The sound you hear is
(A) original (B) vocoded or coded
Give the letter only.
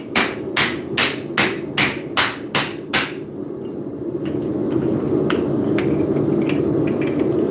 A